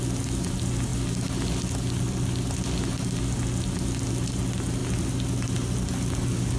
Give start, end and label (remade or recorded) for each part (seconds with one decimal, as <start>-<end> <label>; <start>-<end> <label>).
0.0-6.6 recorded